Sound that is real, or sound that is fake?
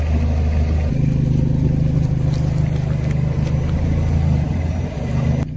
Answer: real